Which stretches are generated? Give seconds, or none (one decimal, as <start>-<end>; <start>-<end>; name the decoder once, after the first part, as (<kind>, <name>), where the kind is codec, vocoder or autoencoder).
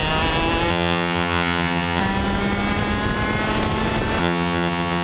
0.7-2.0 (vocoder, HiFi-GAN); 4.2-5.0